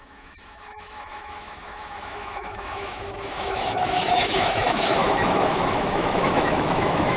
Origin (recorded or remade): remade